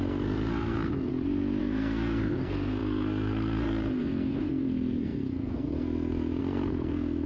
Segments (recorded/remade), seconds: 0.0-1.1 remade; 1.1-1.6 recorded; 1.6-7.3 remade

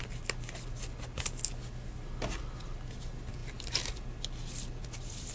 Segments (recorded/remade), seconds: 0.0-5.3 recorded

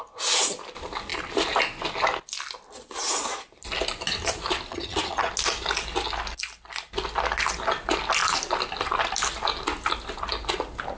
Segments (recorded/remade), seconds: 0.0-4.7 recorded; 4.7-5.3 remade; 5.3-11.0 recorded

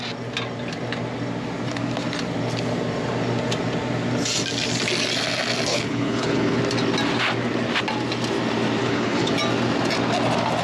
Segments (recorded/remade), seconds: 0.0-5.7 recorded; 5.7-6.6 remade; 6.6-8.8 recorded; 8.8-9.3 remade; 9.3-10.6 recorded

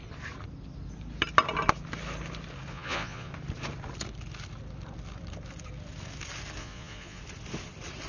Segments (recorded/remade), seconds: 0.0-2.7 recorded; 2.7-3.3 remade; 3.3-6.6 recorded; 6.6-7.2 remade; 7.2-8.1 recorded

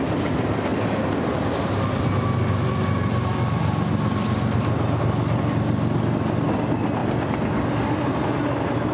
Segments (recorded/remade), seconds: 0.0-8.9 recorded

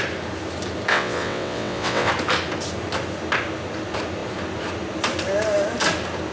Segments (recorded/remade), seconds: 0.0-0.9 recorded; 0.9-2.1 remade; 2.1-6.3 recorded

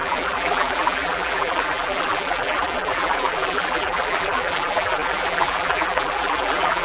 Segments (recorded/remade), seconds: 0.0-6.8 remade